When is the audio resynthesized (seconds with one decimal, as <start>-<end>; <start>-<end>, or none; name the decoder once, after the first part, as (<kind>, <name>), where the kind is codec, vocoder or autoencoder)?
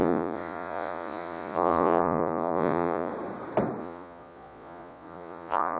0.0-3.1 (vocoder, Vocos); 3.8-5.8